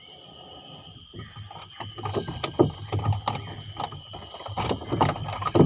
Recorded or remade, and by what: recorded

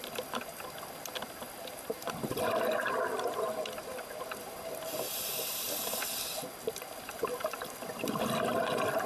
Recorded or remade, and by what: recorded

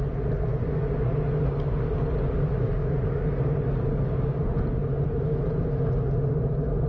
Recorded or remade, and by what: recorded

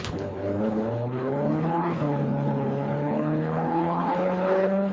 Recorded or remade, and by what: remade, codec, HILCodec